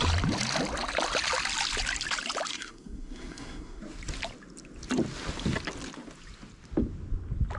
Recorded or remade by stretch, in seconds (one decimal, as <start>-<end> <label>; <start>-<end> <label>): 0.0-2.5 recorded; 2.5-3.8 remade; 3.8-7.6 recorded